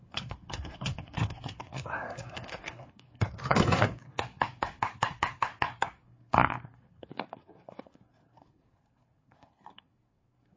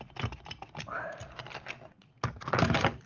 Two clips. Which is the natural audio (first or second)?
second